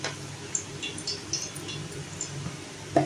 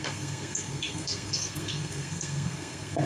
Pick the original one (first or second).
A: first